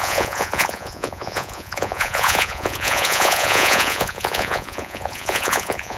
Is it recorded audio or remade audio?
remade